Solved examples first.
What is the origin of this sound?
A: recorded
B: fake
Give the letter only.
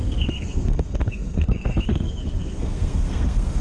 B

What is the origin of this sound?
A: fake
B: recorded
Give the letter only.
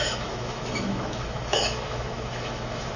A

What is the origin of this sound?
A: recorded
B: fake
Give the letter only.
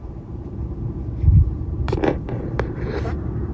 B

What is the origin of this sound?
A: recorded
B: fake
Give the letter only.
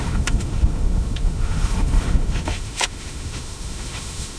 B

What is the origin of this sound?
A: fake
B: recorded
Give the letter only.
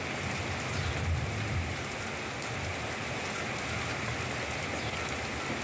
B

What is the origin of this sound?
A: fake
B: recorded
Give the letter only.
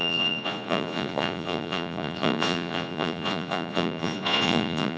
A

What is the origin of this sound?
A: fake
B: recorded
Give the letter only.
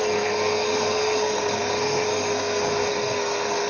A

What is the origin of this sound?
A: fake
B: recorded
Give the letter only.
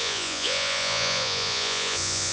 A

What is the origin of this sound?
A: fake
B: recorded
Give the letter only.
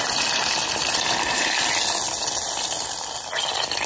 B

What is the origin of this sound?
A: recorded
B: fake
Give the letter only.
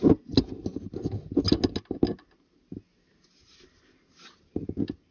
A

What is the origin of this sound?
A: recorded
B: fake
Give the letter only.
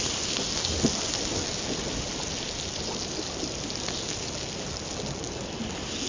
A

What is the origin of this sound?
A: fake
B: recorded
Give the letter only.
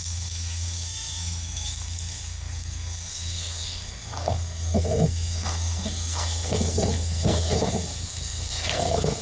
A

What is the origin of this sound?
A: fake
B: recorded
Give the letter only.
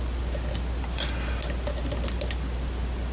B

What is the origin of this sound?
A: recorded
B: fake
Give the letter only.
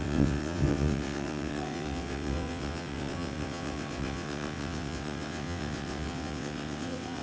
B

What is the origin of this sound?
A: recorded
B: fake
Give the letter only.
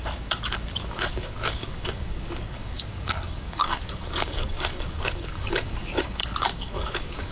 B